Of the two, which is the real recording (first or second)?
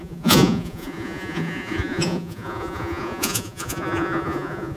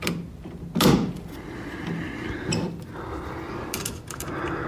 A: second